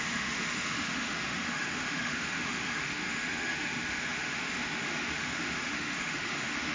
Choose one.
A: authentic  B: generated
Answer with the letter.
B